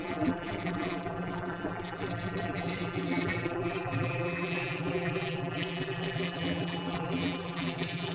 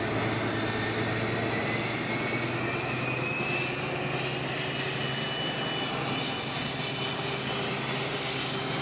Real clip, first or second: second